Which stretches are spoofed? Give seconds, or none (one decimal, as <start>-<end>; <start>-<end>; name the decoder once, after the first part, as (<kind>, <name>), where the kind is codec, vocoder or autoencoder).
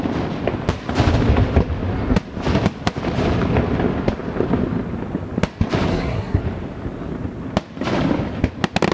5.9-6.4 (codec, SNAC)